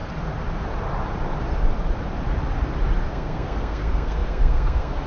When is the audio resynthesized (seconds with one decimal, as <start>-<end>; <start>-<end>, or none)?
3.1-5.1